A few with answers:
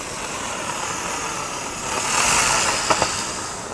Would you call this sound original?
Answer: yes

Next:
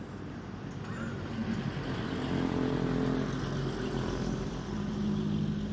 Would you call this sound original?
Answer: yes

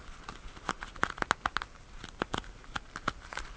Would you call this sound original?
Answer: yes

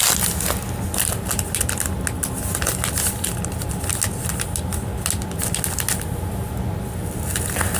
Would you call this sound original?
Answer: yes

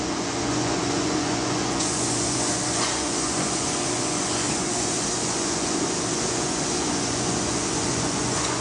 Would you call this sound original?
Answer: no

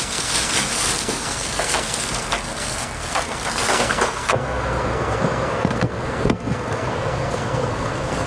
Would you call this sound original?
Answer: no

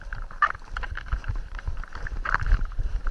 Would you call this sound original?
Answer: no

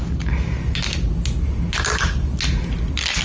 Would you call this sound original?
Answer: yes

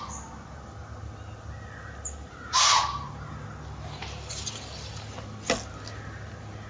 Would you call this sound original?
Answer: yes